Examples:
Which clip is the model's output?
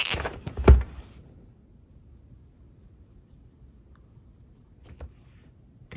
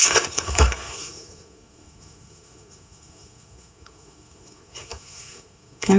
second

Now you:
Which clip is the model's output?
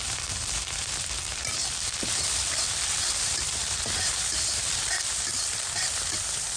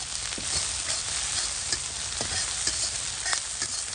first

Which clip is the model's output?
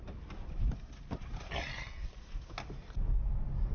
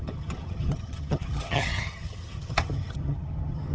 second